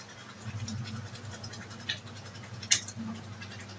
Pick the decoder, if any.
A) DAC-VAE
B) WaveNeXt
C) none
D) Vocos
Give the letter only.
C